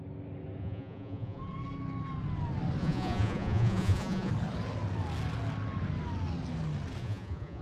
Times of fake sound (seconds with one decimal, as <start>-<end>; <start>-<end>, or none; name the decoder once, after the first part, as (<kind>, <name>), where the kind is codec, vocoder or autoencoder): 0.6-1.4 (vocoder, Vocos); 2.8-4.3; 7.0-7.6